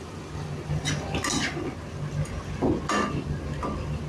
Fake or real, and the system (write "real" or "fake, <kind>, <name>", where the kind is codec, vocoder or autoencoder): real